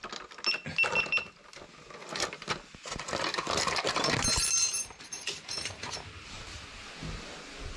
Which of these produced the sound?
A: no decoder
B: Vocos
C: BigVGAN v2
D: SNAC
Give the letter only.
A